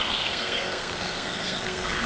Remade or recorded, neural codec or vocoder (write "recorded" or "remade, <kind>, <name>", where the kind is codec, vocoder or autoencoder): remade, codec, SNAC